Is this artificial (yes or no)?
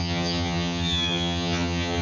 yes